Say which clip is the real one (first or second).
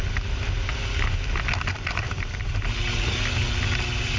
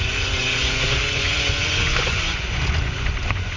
first